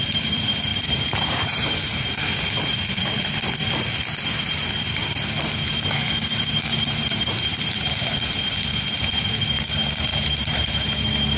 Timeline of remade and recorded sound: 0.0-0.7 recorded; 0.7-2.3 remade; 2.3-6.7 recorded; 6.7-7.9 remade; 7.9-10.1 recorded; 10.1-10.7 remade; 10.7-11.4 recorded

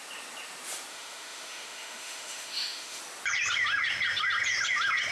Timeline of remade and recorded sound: 0.0-0.9 recorded; 0.9-3.0 remade; 3.0-5.1 recorded